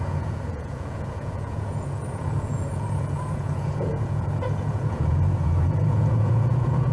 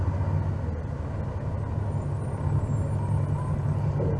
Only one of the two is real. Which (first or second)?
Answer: second